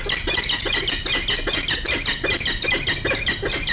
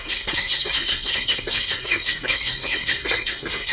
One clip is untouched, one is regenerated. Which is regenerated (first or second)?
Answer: second